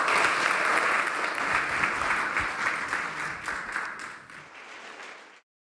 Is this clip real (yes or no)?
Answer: yes